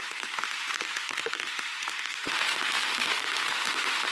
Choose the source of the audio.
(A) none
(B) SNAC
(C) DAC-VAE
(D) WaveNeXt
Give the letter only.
C